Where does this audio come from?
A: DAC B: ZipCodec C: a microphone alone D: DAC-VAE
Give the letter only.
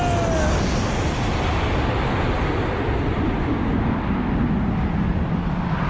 C